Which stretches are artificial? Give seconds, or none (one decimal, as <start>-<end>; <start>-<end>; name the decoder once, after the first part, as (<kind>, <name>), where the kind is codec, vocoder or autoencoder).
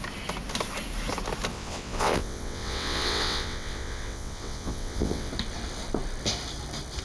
1.5-5.3 (vocoder, WaveNeXt)